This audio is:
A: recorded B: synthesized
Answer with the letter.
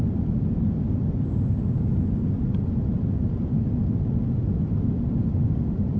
A